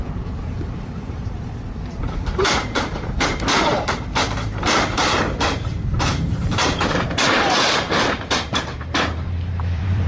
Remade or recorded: remade